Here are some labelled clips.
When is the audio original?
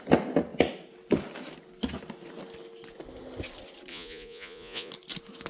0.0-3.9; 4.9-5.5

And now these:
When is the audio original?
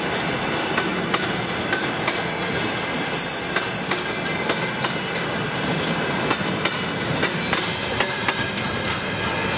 0.0-9.6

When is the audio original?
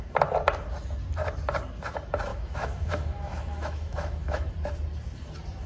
0.0-2.3; 4.5-5.7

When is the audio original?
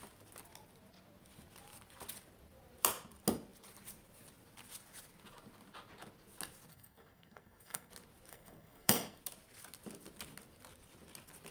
0.0-6.7; 7.9-8.3; 9.2-11.5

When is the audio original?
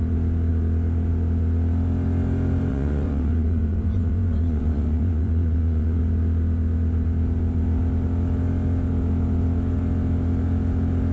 0.0-2.7; 6.0-11.1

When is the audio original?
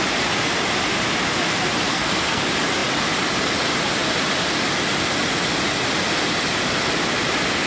0.0-1.9; 2.4-7.7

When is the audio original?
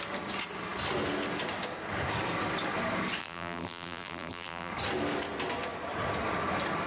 0.0-3.2; 4.7-6.9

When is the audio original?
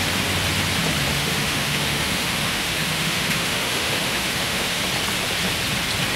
0.0-1.1; 4.8-6.2